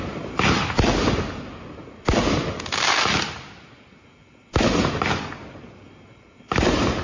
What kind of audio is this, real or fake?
real